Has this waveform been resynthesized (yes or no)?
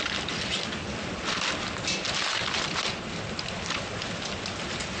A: no